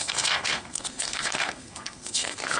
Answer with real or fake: fake